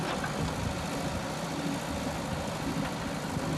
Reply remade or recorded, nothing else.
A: recorded